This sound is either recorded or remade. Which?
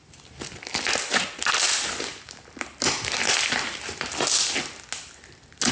recorded